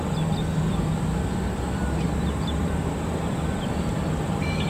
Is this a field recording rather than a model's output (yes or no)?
yes